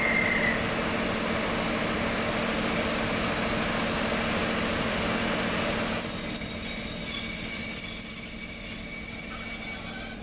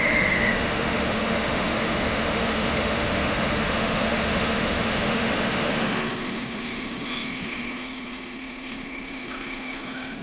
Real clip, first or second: first